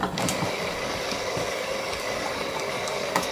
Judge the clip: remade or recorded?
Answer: remade